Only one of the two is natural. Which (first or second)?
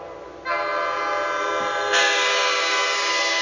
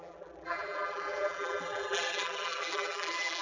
first